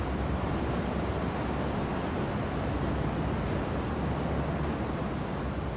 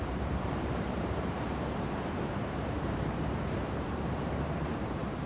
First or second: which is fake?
second